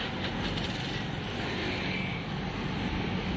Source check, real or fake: real